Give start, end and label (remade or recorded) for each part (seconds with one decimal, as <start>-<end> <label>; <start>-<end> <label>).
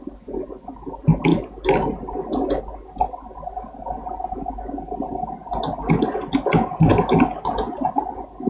0.0-8.5 recorded